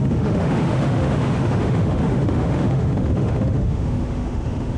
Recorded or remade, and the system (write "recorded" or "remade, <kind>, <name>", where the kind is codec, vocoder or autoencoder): remade, autoencoder, DAC-VAE